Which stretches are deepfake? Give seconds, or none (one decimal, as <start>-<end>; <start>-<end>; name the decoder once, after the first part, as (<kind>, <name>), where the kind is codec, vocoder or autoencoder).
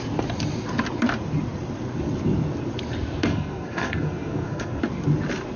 3.2-4.8 (codec, SNAC)